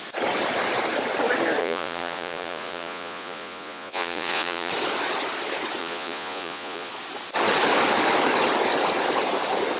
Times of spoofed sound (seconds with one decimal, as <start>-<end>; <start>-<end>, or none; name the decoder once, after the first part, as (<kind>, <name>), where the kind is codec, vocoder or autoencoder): 1.6-4.7 (vocoder, Vocos); 5.8-6.9